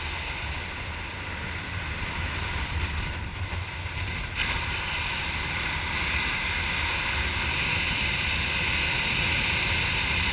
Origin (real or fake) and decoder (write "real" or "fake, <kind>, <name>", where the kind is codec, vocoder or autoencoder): real